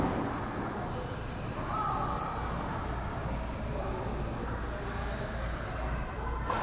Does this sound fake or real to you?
real